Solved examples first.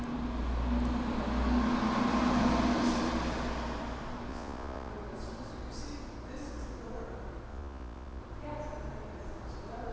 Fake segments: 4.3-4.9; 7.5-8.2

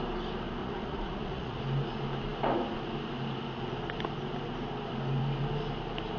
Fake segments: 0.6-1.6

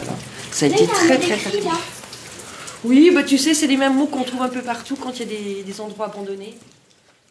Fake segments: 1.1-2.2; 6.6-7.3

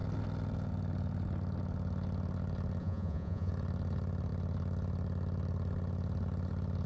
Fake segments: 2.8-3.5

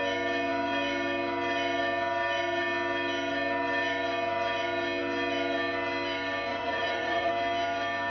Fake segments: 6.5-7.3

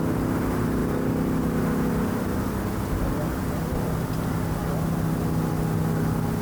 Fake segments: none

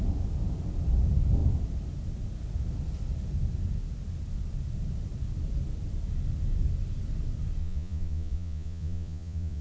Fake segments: 7.6-9.6

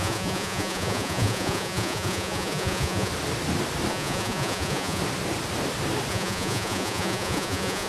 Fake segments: 0.0-3.1; 3.9-5.0; 6.1-7.9